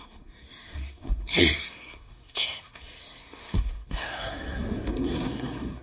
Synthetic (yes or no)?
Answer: yes